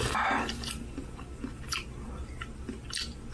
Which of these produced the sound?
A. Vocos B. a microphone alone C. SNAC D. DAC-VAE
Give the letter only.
B